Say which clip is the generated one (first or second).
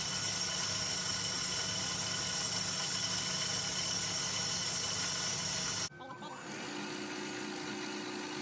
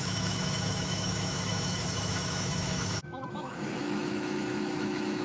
second